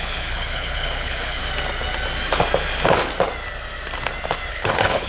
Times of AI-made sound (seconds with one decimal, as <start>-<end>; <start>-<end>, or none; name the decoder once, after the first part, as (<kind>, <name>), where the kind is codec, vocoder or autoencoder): 0.0-1.4 (codec, HILCodec); 4.5-5.1